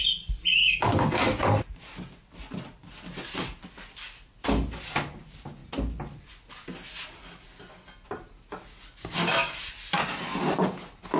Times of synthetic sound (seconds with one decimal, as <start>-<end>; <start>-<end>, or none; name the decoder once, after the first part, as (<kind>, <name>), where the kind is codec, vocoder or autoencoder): 0.6-1.4 (codec, DAC); 9.0-9.7